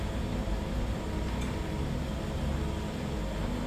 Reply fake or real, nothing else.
real